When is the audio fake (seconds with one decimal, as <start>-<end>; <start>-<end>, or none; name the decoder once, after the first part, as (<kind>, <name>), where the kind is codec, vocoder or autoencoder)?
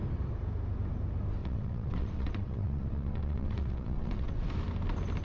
1.4-4.5 (vocoder, WaveNeXt)